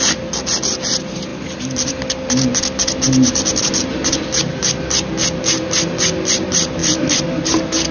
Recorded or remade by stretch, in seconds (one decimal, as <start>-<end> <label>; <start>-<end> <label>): 0.0-7.9 recorded